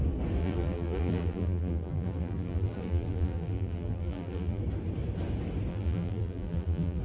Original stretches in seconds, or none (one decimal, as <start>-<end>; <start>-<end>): 0.0-0.4; 4.6-5.7